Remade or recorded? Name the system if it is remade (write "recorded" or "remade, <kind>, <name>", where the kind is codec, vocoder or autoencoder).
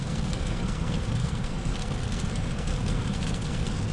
remade, codec, SNAC